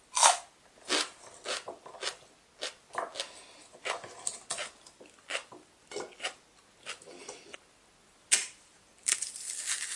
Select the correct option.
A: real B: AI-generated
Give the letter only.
A